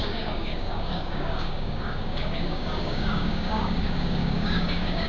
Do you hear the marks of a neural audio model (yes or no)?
yes